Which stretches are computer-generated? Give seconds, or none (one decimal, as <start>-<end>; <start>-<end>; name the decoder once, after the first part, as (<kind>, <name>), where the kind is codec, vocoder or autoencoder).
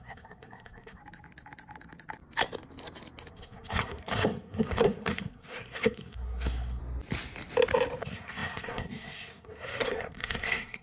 0.0-1.0 (codec, SNAC); 3.3-6.8; 8.0-10.8